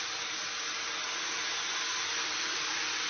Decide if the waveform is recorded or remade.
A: recorded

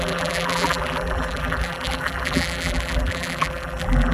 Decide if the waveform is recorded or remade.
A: remade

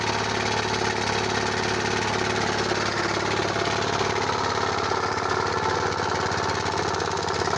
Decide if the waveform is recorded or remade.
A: recorded